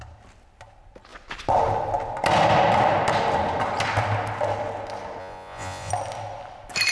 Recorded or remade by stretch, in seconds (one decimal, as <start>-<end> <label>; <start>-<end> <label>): 0.0-5.2 recorded; 5.2-5.9 remade; 5.9-6.9 recorded

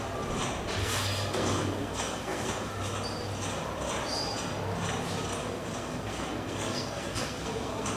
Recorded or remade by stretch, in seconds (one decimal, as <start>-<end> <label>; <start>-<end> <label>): 0.0-0.8 recorded; 0.8-2.7 remade; 2.7-5.4 recorded; 5.4-8.0 remade